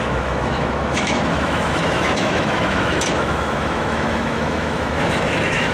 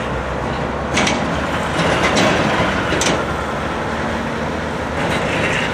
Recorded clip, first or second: second